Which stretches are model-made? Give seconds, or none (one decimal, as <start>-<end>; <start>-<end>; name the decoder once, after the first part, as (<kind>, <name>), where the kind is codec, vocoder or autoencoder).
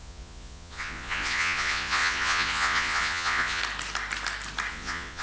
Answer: 0.0-3.6 (vocoder, Vocos); 4.7-5.2